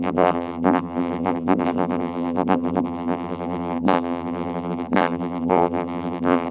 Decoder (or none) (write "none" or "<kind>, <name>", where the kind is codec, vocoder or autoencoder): vocoder, BigVGAN v2